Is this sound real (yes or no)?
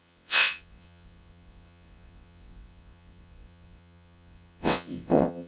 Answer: no